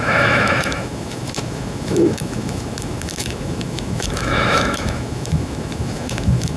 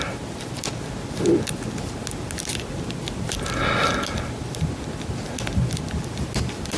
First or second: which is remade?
first